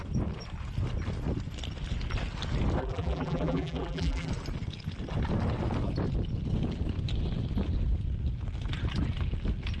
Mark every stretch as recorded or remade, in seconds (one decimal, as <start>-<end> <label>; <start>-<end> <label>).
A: 0.0-2.8 recorded; 2.8-4.3 remade; 4.3-9.8 recorded